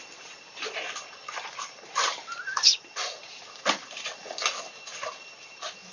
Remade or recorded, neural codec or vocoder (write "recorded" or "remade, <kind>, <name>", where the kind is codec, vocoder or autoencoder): recorded